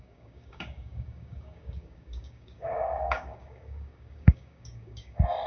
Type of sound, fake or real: fake